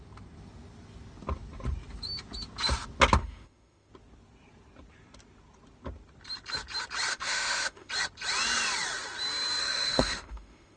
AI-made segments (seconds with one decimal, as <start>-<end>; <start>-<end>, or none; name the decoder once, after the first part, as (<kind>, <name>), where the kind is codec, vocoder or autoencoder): 3.2-3.9 (autoencoder, DAC-VAE); 7.1-7.9; 9.6-10.8